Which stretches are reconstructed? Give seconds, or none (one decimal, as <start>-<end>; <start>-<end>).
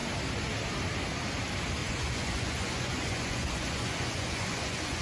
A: 1.8-5.0